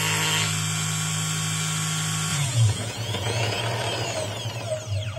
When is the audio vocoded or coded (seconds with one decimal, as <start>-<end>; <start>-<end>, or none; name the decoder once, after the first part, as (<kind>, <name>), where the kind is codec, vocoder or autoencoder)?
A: 2.3-3.6 (vocoder, Vocos)